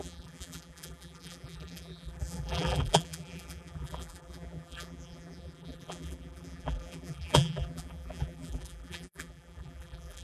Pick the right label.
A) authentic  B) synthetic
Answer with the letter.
B